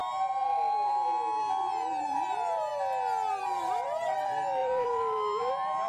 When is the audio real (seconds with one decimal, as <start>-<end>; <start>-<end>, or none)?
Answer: 2.7-3.3